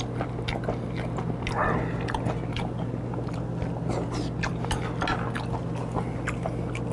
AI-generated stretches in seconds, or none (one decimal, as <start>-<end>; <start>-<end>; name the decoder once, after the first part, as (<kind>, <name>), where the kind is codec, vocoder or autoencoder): none